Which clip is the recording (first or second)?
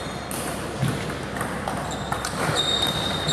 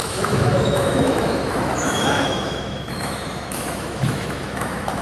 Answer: first